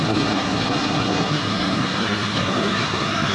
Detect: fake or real fake